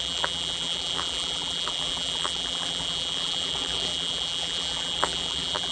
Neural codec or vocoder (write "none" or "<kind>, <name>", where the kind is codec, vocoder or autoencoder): vocoder, BigVGAN v2